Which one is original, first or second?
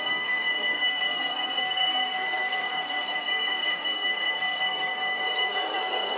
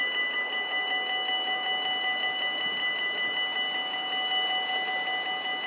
second